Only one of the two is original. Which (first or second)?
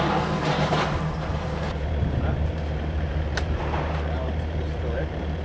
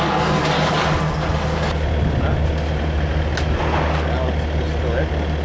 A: second